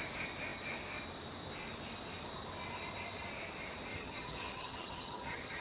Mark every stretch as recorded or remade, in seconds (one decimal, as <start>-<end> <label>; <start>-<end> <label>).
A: 0.0-3.9 recorded; 3.9-5.6 remade